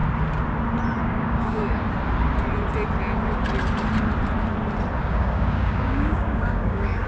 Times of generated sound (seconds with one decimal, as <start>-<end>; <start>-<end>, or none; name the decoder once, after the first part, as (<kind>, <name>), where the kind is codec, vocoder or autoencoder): 1.0-1.6 (codec, DAC); 5.0-7.1